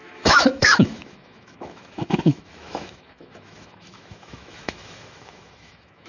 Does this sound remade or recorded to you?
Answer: remade